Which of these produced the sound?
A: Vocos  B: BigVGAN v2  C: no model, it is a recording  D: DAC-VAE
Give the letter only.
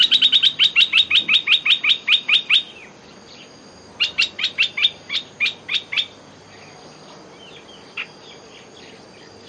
C